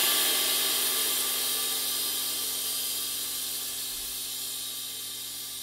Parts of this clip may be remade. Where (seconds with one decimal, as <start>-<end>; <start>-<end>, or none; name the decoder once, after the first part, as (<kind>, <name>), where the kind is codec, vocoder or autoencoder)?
none